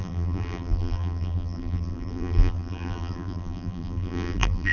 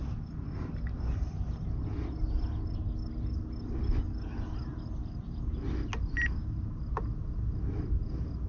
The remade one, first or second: first